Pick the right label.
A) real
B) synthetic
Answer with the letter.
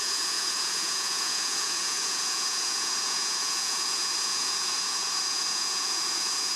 B